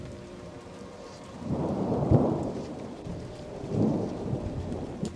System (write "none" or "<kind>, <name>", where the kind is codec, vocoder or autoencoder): vocoder, BigVGAN v2